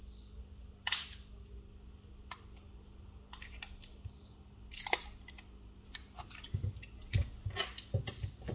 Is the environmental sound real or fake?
real